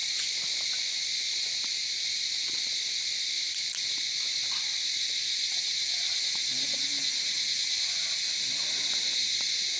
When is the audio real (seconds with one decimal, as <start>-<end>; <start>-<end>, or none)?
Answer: 0.0-9.8